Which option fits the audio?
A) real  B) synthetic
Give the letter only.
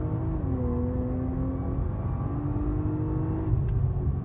A